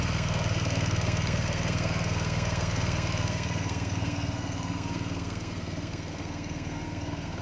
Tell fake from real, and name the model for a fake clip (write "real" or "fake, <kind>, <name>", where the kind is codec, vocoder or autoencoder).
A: fake, codec, SNAC